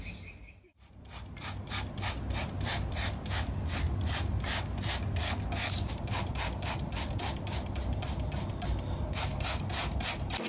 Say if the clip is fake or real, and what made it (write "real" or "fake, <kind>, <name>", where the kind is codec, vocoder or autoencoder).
real